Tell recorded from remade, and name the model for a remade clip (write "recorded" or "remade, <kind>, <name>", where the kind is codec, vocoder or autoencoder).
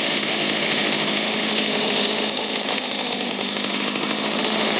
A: remade, autoencoder, DAC-VAE